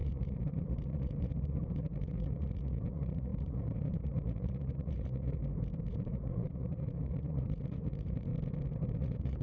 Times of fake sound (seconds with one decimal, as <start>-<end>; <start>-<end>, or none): 0.0-5.4; 5.9-8.3; 8.9-9.4